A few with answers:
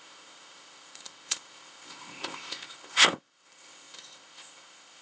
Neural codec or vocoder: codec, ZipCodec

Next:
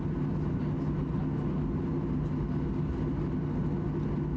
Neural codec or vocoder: none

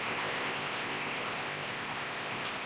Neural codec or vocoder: codec, ZipCodec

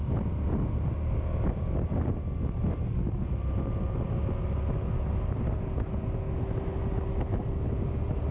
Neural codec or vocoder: none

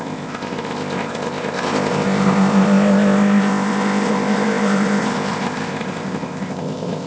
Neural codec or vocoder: codec, ZipCodec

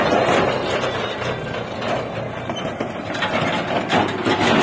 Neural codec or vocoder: none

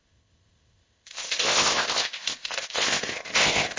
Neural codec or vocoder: codec, ZipCodec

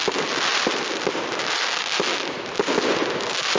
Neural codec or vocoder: none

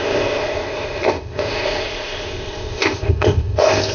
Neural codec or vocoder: codec, ZipCodec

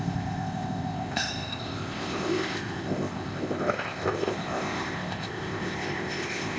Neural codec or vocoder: codec, ZipCodec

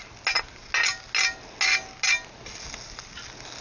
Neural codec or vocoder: none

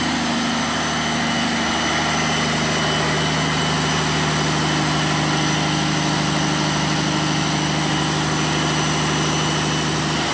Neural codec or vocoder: none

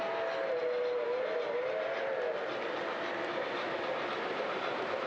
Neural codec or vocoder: none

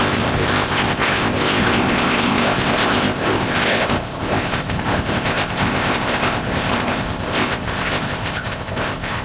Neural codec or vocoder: codec, ZipCodec